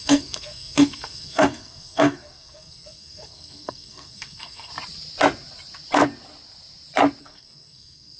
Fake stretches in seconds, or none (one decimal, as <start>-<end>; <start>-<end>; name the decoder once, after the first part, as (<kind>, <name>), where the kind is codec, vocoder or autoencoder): 0.0-4.7 (codec, SNAC); 7.2-8.2